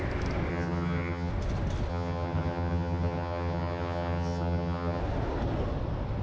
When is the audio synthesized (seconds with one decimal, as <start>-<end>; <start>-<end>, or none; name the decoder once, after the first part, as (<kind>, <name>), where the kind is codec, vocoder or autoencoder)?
0.5-1.3 (vocoder, HiFi-GAN); 1.9-5.0